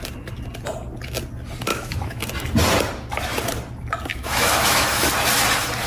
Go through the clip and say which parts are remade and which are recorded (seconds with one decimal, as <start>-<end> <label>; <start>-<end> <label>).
0.0-1.7 recorded; 1.7-2.2 remade; 2.2-4.1 recorded; 4.1-5.1 remade; 5.1-5.9 recorded